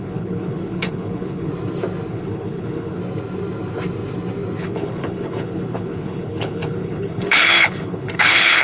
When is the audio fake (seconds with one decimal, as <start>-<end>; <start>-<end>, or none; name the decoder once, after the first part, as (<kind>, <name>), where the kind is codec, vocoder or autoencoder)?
0.0-1.5 (codec, HILCodec); 2.1-3.0; 4.6-8.6